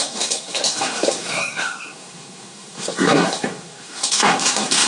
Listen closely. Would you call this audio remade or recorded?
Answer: remade